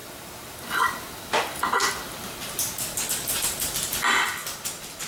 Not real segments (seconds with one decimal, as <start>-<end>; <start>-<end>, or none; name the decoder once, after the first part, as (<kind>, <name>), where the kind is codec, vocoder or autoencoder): none